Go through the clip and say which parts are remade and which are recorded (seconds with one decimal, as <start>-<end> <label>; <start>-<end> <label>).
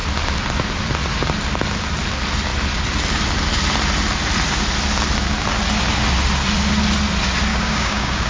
0.0-7.5 recorded; 7.5-8.3 remade